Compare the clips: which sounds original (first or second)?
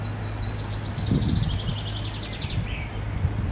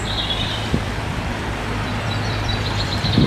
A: first